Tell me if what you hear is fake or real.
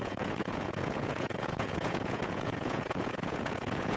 fake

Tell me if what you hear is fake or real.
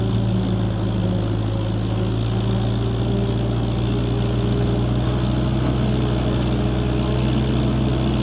real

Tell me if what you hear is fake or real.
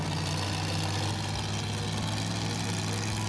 real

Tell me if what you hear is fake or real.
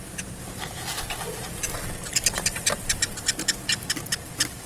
fake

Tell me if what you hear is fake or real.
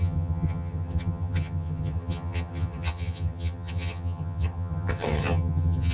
fake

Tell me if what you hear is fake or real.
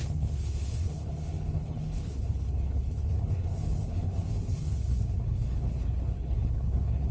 fake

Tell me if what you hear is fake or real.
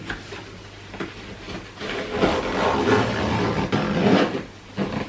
real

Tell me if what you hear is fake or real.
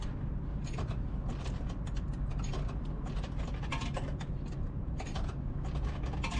real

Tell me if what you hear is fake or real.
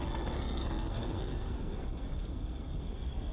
fake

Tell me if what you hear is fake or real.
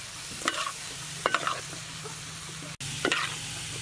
real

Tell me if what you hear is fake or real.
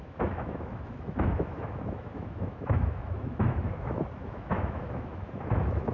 fake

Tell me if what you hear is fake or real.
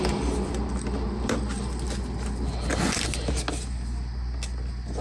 real